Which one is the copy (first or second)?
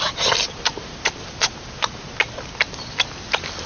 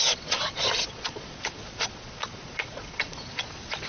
second